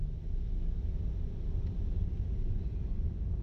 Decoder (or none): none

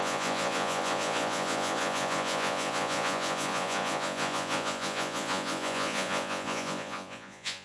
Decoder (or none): vocoder, Vocos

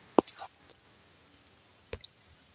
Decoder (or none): none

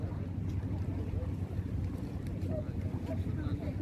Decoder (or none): none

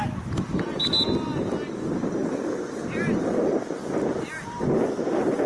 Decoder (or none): none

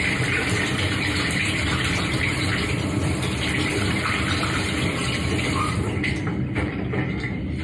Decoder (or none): vocoder, BigVGAN v2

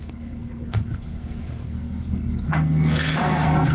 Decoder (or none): codec, SNAC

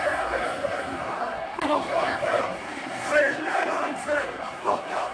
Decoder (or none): codec, SNAC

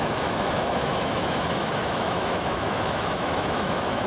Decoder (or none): autoencoder, DAC-VAE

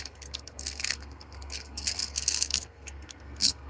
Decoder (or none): codec, SNAC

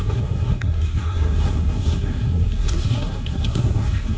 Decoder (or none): codec, SNAC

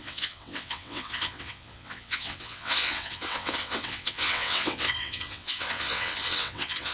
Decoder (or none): vocoder, WaveNeXt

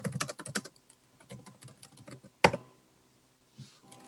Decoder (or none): none